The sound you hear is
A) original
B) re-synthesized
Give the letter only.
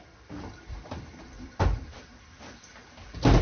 B